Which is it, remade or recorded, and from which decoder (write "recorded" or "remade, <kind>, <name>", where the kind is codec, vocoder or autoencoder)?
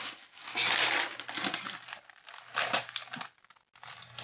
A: recorded